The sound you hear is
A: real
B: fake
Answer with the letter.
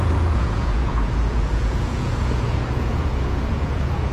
B